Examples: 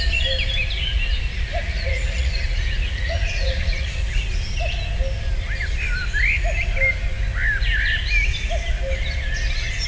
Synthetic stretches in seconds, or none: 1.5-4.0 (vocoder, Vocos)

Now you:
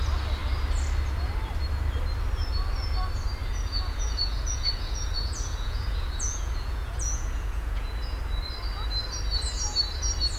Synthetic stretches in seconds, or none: 3.4-8.0 (vocoder, Vocos)

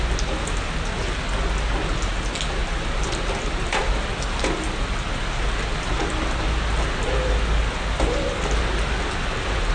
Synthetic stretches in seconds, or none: none

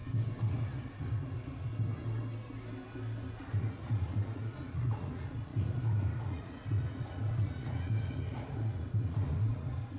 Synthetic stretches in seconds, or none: 0.5-1.7 (vocoder, Vocos); 3.4-10.0

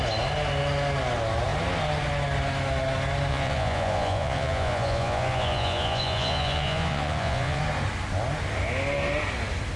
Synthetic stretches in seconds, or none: 3.3-7.6 (vocoder, Vocos)

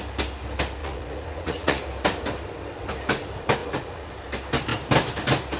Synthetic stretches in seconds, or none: 0.8-1.8 (vocoder, Vocos); 3.6-4.1

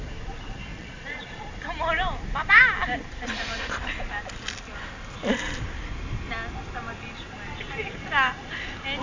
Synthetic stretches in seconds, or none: 0.7-1.5 (vocoder, Vocos)

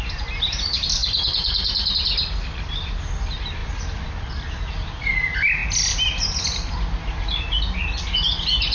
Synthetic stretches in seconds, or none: none